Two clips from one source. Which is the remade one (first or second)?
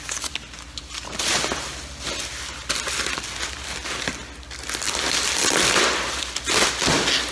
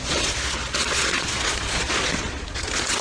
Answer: second